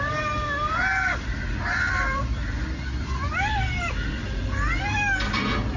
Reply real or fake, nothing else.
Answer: real